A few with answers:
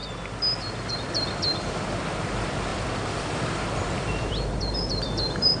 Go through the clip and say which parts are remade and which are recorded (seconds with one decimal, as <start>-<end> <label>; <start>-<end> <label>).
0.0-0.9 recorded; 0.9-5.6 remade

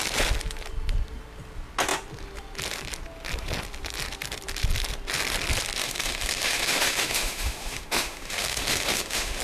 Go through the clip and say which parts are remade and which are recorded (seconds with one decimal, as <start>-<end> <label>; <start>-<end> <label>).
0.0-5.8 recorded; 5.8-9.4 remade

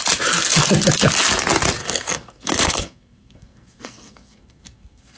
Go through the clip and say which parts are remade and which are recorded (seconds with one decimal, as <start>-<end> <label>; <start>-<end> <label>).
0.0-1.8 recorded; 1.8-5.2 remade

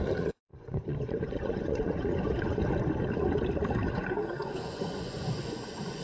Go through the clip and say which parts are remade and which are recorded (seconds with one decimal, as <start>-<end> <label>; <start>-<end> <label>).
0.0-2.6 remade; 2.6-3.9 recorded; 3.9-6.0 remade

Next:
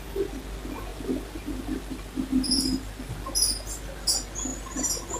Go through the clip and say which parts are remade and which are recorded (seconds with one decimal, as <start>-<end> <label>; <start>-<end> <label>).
0.0-0.9 recorded; 0.9-3.3 remade; 3.3-4.5 recorded; 4.5-5.2 remade